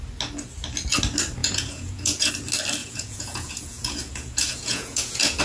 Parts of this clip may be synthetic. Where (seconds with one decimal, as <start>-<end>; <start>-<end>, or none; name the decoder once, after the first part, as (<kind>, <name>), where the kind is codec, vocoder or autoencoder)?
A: 1.4-2.3 (vocoder, Vocos); 2.8-5.4